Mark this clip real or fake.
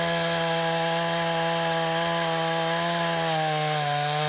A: real